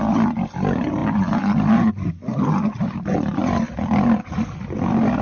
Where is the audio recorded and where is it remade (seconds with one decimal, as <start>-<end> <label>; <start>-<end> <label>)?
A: 0.0-5.2 recorded